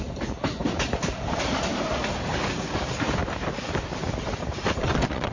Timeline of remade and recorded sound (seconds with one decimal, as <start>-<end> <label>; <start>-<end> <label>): 0.0-4.8 recorded; 4.8-5.3 remade